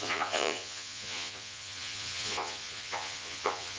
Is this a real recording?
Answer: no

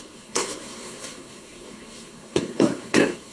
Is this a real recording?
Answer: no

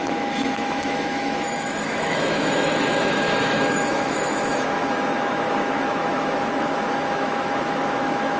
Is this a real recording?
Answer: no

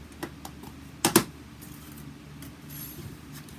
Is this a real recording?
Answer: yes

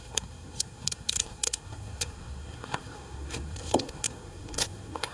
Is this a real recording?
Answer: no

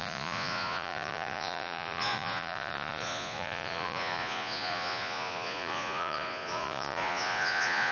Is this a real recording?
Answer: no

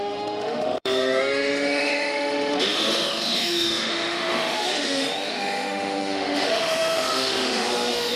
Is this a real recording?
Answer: no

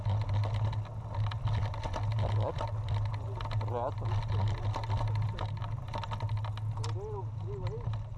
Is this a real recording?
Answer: yes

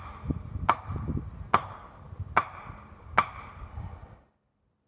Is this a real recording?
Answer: yes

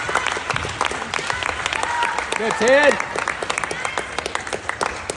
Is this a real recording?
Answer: yes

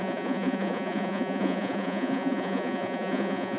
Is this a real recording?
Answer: no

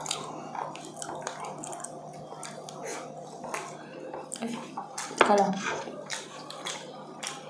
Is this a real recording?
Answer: yes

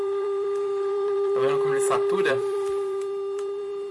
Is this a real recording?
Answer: no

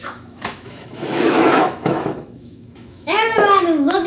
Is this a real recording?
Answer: no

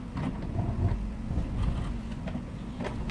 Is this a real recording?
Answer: no